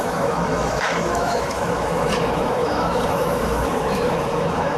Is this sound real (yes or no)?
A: no